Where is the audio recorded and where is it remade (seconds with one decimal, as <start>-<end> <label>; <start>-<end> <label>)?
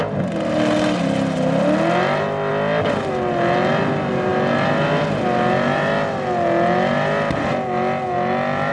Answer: 0.0-8.7 recorded